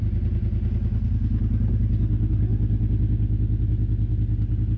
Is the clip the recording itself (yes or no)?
yes